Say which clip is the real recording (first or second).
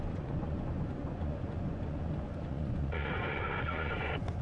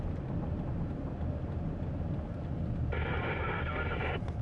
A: second